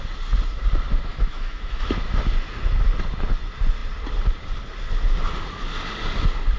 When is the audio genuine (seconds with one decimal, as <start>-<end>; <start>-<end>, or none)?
0.0-1.1; 1.9-6.6